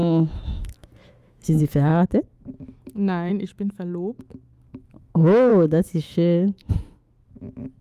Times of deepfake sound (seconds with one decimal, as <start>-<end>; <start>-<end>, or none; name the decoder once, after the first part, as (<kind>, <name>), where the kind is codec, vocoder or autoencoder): 0.0-7.8 (autoencoder, DAC-VAE)